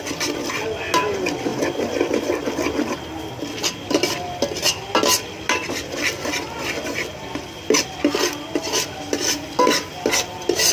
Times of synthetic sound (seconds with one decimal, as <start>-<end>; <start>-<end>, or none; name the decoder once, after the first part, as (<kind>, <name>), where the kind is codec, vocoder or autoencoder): none

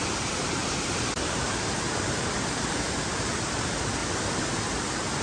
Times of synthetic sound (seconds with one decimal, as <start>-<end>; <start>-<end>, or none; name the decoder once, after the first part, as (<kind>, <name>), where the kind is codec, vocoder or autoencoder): 0.0-4.0 (vocoder, BigVGAN v2)

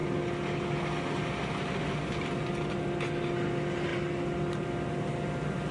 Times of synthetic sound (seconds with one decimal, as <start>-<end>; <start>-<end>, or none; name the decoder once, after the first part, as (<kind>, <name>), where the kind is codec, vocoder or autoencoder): none

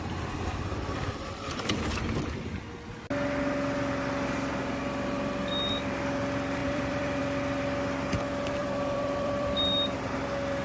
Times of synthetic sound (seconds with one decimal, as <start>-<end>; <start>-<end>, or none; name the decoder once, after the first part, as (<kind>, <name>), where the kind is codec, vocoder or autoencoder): 6.6-7.2 (vocoder, BigVGAN v2); 8.6-9.6

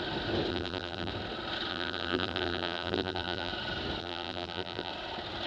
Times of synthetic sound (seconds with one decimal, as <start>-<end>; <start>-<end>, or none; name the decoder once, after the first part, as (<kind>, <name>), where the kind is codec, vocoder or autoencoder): 0.5-1.1 (vocoder, BigVGAN v2); 1.7-3.5; 4.0-4.9